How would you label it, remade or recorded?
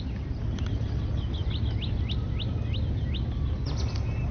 recorded